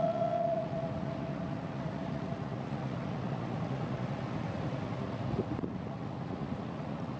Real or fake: fake